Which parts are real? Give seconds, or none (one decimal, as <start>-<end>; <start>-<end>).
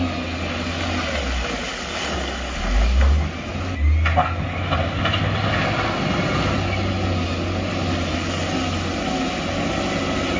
0.0-10.4